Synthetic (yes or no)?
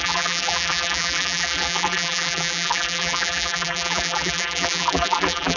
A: yes